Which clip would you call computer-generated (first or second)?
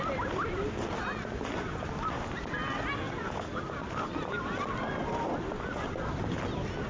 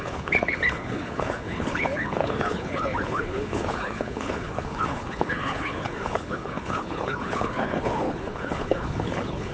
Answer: second